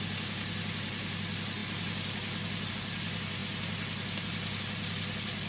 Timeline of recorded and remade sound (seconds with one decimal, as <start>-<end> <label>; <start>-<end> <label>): 0.0-5.5 recorded